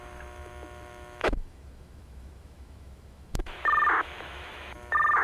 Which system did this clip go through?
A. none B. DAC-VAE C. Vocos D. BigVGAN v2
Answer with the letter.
B